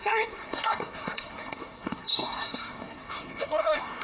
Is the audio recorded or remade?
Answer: remade